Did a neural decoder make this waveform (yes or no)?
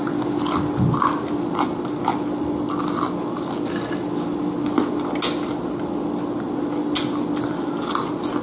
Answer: no